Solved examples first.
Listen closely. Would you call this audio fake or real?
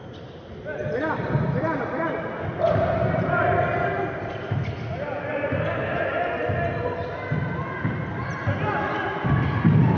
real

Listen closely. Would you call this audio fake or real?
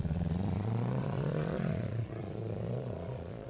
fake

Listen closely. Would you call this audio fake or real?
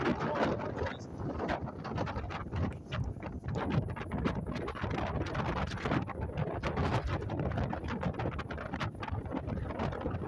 real